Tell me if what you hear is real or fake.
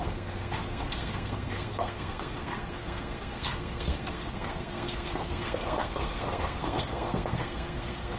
fake